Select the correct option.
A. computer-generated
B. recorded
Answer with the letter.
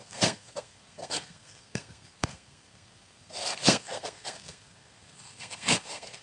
A